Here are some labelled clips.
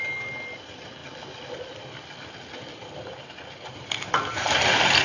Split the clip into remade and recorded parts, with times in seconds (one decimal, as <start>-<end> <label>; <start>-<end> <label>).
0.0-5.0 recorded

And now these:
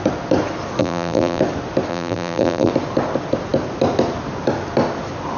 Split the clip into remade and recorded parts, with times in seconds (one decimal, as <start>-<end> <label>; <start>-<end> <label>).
0.0-0.8 recorded; 0.8-1.4 remade; 1.4-1.9 recorded; 1.9-2.7 remade; 2.7-5.4 recorded

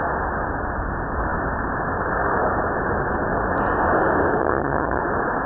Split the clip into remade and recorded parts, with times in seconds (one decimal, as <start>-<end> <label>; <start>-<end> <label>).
0.0-4.4 recorded; 4.4-5.0 remade; 5.0-5.5 recorded

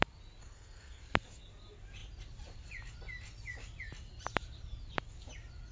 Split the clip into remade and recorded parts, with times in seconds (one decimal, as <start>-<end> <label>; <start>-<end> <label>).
0.0-0.4 recorded; 0.4-1.0 remade; 1.0-5.7 recorded